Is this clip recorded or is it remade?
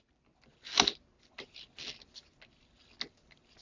recorded